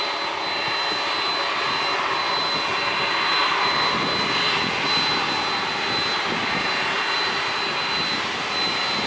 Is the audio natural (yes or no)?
yes